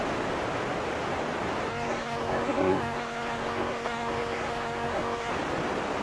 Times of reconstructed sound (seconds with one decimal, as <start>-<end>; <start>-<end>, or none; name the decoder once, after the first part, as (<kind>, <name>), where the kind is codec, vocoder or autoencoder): 1.7-5.3 (codec, SNAC)